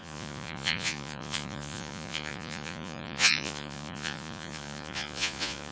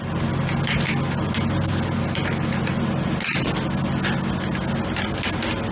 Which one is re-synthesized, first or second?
first